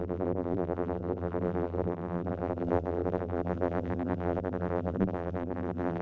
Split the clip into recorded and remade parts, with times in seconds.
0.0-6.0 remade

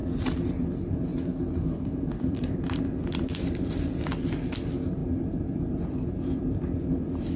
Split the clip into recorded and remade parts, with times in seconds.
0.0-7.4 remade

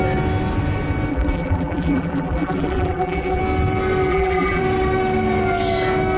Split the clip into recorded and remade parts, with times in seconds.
0.0-1.1 recorded; 1.1-3.4 remade; 3.4-4.1 recorded; 4.1-4.6 remade; 4.6-6.2 recorded